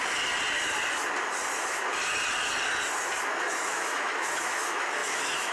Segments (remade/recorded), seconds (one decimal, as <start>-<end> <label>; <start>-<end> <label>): 0.0-3.3 recorded; 3.3-5.5 remade